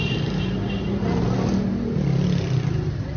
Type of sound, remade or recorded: recorded